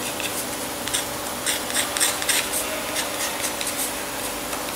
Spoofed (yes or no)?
no